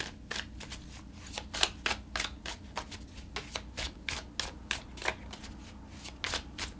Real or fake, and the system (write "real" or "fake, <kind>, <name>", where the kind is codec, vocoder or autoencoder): real